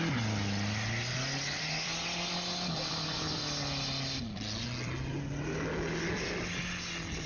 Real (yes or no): yes